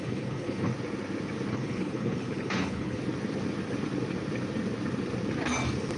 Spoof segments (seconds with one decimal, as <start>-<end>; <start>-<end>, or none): 0.0-0.7; 1.5-3.0